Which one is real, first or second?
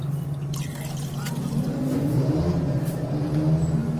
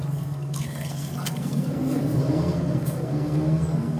first